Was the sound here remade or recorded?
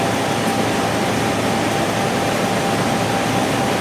recorded